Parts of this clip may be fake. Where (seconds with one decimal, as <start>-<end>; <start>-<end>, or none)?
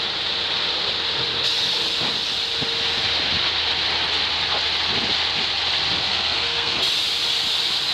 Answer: 6.1-6.8